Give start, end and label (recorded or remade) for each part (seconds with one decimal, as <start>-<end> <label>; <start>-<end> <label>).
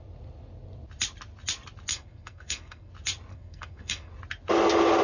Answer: 0.0-1.9 recorded; 1.9-2.9 remade; 2.9-3.3 recorded; 3.3-4.1 remade; 4.1-5.0 recorded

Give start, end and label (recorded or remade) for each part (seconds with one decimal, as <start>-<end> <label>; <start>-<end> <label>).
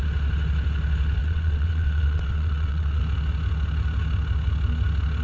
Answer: 0.0-1.2 recorded; 1.2-3.0 remade; 3.0-5.2 recorded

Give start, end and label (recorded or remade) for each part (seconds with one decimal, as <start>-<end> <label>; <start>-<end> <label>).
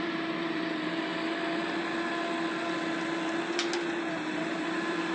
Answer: 0.0-1.1 remade; 1.1-4.1 recorded; 4.1-5.1 remade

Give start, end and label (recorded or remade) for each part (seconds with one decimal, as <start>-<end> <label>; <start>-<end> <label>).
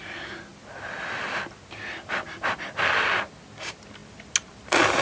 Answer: 0.0-5.0 recorded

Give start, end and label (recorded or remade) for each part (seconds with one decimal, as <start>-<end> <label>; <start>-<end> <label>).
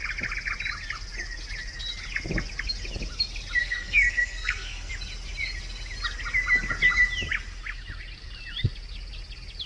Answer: 0.0-3.6 recorded; 3.6-4.9 remade; 4.9-9.7 recorded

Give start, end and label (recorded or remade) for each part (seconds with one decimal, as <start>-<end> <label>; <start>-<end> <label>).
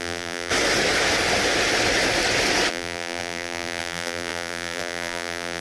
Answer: 0.0-0.5 remade; 0.5-2.7 recorded; 2.7-5.6 remade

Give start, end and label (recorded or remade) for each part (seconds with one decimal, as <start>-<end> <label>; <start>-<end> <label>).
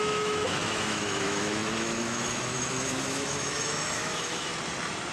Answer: 0.0-4.5 remade; 4.5-5.1 recorded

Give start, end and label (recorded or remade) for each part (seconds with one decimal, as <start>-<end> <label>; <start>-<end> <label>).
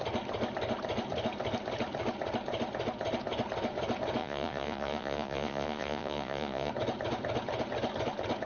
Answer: 0.0-4.2 recorded; 4.2-6.7 remade; 6.7-8.5 recorded